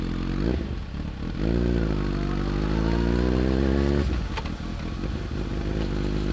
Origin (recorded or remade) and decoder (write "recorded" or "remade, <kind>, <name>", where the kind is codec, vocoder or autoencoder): recorded